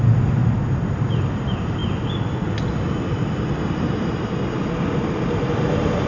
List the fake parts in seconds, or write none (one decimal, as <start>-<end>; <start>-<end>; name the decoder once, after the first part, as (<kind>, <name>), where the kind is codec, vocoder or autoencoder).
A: none